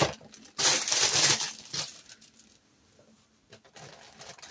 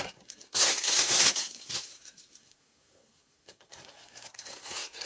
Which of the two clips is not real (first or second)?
second